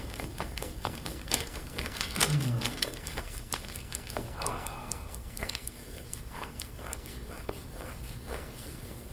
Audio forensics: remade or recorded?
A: remade